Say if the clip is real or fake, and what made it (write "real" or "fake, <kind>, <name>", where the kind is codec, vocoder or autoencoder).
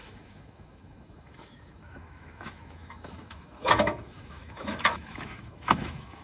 fake, autoencoder, DAC-VAE